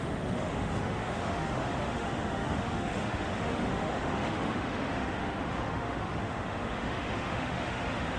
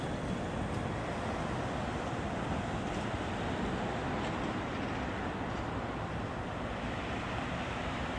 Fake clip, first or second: first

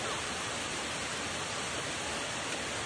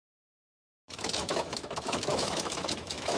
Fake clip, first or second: second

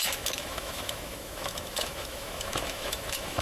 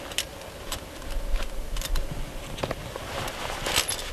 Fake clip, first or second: first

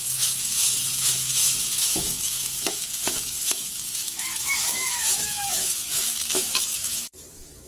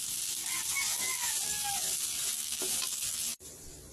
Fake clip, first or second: first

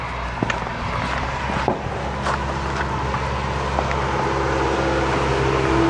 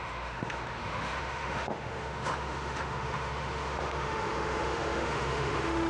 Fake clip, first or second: second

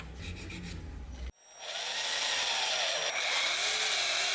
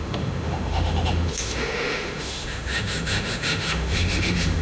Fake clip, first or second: second